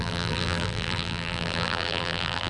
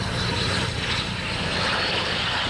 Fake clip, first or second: first